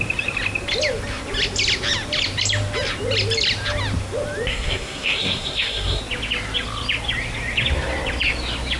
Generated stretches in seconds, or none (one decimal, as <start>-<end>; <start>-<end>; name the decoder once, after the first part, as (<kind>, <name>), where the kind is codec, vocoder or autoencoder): 4.5-6.0 (codec, SNAC)